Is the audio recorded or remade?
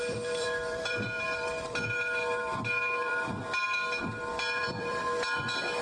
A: remade